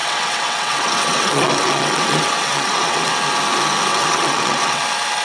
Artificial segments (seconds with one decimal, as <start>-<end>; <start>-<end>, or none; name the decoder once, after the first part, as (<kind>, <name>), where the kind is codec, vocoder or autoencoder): 0.0-3.1 (vocoder, WaveNeXt); 3.9-4.8